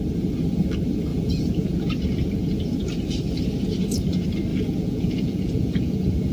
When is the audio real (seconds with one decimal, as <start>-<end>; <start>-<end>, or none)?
0.0-1.1; 1.9-4.5